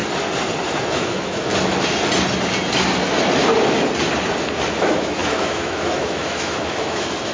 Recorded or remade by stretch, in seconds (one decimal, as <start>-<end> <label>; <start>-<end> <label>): 0.0-0.9 recorded; 0.9-1.5 remade; 1.5-4.7 recorded; 4.7-7.3 remade